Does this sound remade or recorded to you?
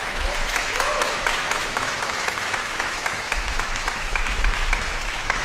remade